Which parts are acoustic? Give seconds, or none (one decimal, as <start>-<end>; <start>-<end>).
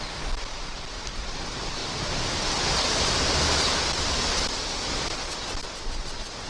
0.0-6.5